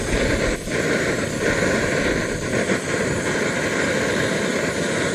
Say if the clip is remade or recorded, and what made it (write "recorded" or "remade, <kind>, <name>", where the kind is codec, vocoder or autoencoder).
recorded